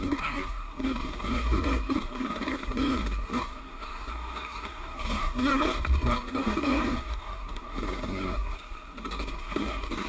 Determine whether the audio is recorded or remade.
remade